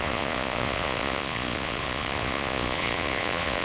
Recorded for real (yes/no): no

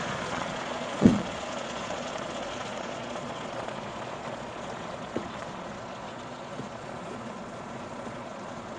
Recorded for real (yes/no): no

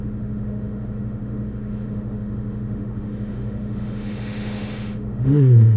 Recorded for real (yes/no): no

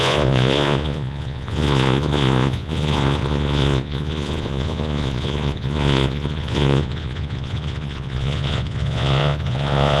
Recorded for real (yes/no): no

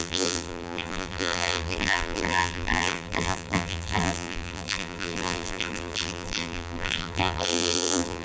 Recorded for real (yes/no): no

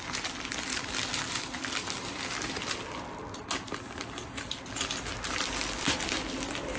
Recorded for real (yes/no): yes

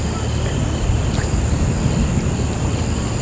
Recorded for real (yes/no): yes